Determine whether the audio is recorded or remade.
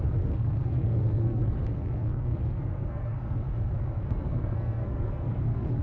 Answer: remade